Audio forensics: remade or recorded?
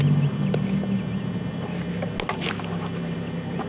recorded